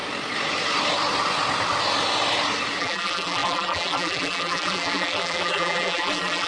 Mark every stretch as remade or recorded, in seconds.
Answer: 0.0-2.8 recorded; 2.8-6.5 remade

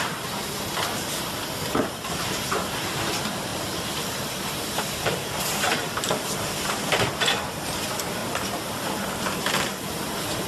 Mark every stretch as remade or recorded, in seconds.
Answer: 0.0-3.5 recorded; 3.5-6.7 remade; 6.7-8.2 recorded; 8.2-9.8 remade; 9.8-10.5 recorded

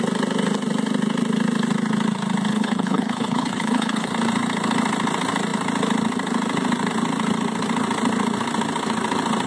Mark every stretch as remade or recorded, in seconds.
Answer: 0.0-2.5 recorded; 2.5-4.1 remade; 4.1-9.5 recorded